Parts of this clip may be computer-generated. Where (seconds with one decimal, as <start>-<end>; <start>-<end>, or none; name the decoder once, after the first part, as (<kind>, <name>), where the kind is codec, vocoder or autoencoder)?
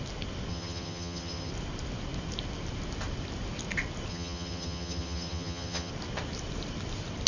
0.5-1.5 (vocoder, HiFi-GAN); 4.1-5.9